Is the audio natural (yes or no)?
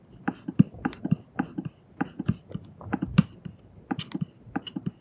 yes